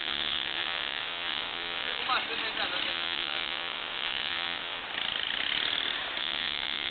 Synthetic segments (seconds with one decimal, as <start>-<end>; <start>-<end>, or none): 0.0-2.0; 2.9-4.8; 6.2-6.9